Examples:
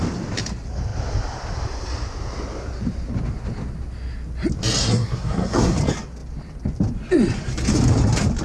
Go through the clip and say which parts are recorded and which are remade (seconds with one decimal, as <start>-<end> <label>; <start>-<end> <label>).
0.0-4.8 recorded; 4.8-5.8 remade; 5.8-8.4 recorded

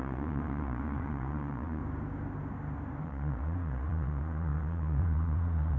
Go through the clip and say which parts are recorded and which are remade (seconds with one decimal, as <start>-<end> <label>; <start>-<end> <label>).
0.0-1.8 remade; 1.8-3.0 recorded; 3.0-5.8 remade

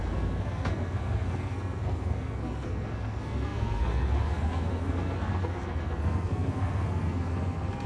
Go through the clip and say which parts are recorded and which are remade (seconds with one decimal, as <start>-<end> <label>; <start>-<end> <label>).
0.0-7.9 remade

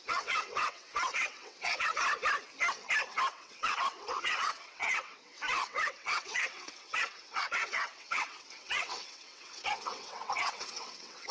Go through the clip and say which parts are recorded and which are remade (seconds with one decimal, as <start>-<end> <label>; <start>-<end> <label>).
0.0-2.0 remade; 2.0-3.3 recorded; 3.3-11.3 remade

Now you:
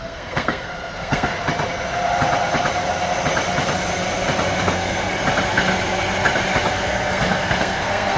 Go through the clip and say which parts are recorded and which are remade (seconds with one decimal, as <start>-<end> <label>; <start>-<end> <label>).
0.0-1.3 remade; 1.3-4.6 recorded; 4.6-5.1 remade; 5.1-6.7 recorded; 6.7-8.2 remade

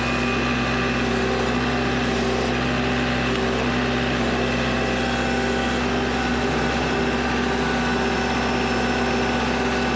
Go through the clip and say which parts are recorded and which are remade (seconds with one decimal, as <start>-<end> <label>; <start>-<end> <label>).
0.0-6.3 recorded; 6.3-7.0 remade; 7.0-10.0 recorded

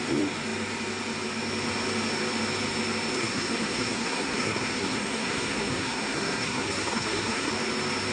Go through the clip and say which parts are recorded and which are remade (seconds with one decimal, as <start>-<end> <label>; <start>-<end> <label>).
0.0-3.2 recorded; 3.2-7.5 remade; 7.5-8.1 recorded